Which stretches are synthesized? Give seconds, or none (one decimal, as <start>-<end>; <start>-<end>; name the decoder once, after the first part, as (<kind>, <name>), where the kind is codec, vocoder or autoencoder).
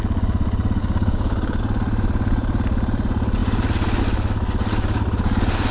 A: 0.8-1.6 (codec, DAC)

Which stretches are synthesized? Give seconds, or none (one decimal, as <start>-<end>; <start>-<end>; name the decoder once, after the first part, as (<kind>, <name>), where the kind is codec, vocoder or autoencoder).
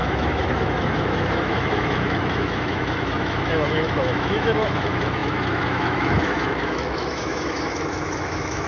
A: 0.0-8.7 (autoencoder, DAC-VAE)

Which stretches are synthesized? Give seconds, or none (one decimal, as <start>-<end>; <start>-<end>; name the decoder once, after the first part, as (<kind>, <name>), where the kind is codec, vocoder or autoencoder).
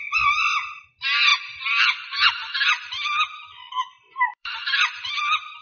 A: 4.3-5.6 (vocoder, BigVGAN v2)